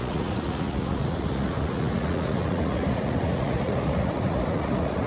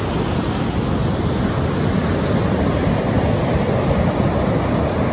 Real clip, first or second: second